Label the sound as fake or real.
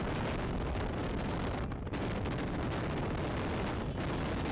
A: real